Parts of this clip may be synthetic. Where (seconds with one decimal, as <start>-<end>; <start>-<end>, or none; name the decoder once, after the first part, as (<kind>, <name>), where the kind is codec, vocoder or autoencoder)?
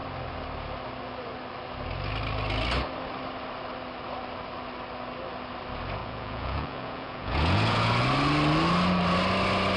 6.0-8.0 (vocoder, Vocos)